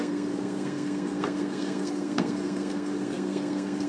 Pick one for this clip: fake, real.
fake